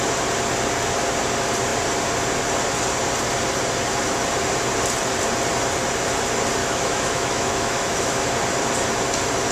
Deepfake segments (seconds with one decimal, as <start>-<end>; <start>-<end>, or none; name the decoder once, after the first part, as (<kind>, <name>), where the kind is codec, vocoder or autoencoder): 6.6-8.3 (autoencoder, DAC-VAE)